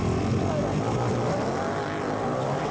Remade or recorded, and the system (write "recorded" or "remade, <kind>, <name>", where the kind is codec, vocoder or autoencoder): recorded